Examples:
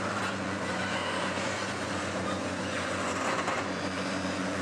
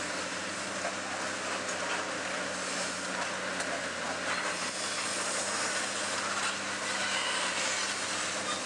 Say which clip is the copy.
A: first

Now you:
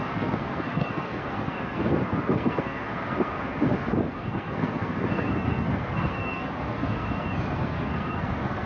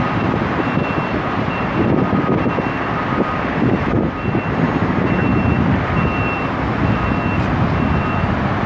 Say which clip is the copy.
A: first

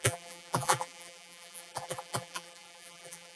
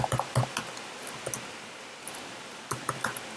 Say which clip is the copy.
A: first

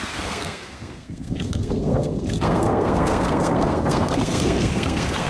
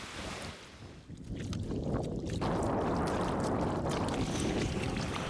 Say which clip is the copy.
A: first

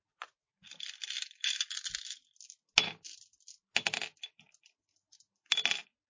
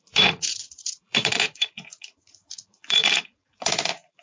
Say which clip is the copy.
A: second